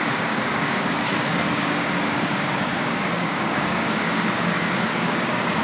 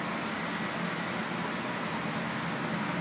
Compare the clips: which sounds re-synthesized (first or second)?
first